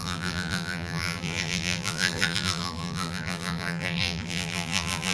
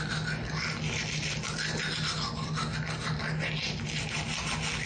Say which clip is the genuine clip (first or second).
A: second